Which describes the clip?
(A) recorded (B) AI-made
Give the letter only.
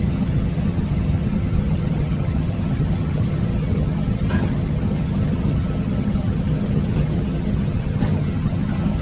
B